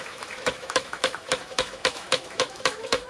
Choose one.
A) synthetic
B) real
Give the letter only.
A